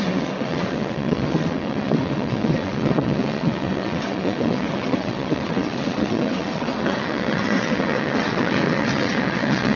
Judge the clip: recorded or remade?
remade